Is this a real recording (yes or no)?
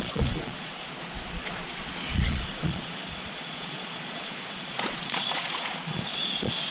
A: no